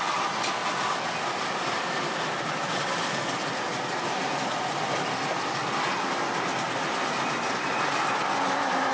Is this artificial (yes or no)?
no